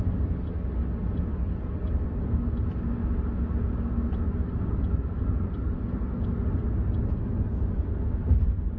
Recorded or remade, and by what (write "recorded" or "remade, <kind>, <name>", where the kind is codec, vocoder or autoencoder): recorded